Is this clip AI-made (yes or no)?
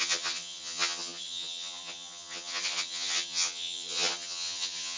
yes